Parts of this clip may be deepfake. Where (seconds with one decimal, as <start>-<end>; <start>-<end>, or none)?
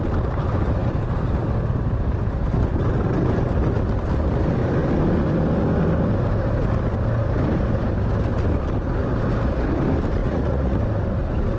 10.2-10.8